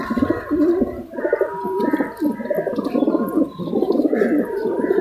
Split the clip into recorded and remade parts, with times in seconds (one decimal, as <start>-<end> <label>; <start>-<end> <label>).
0.0-5.0 recorded